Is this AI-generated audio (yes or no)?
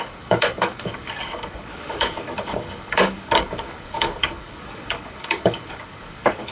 yes